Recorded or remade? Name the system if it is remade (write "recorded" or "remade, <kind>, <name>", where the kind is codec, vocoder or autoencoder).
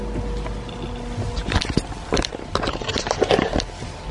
recorded